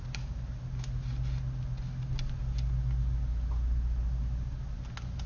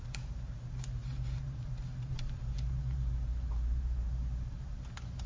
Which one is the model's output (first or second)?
second